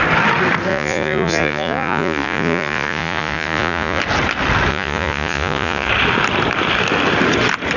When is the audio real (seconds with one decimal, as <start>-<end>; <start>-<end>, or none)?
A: 0.0-0.7; 4.0-4.7; 5.9-7.8